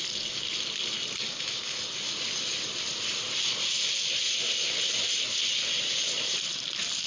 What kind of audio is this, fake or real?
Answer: real